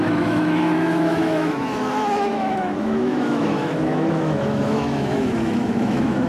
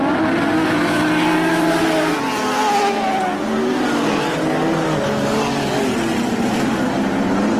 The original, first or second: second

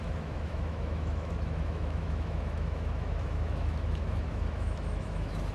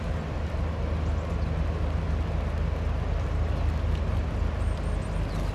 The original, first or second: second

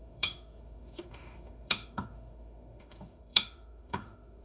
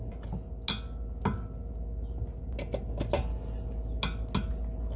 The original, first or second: second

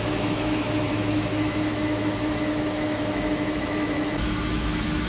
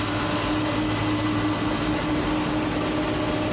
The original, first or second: second